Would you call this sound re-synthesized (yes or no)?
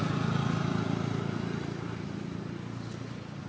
no